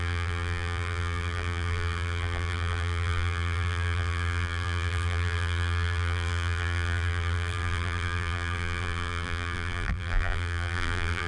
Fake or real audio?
fake